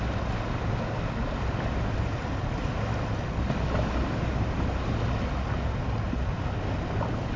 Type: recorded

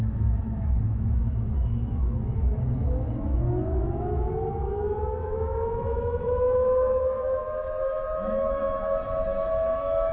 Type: remade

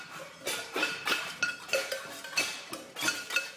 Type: recorded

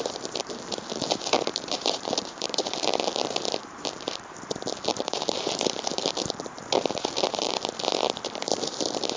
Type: remade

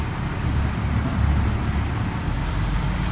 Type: recorded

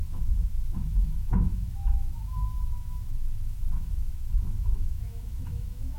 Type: remade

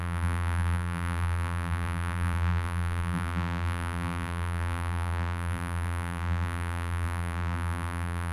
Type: remade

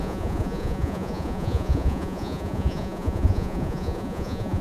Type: remade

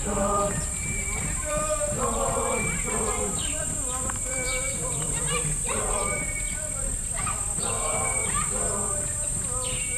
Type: remade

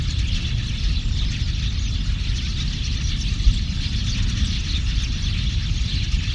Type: recorded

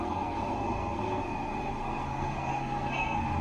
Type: remade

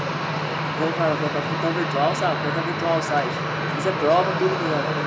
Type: recorded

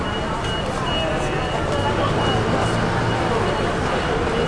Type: recorded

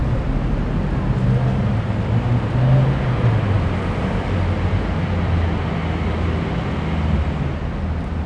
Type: recorded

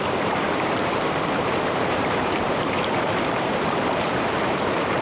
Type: remade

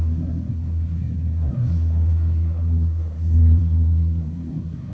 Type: remade